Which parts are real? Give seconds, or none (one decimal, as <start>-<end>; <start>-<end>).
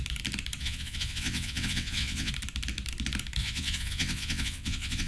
0.0-0.6; 2.3-3.4